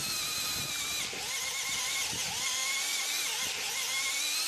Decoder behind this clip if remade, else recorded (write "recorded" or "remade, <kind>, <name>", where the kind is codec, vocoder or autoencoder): recorded